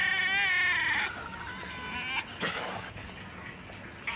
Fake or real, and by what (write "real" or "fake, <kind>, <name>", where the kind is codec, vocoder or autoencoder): real